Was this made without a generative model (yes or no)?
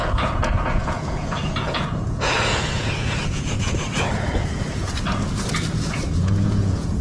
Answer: no